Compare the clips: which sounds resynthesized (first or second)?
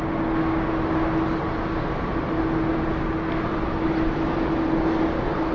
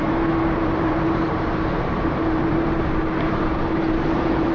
second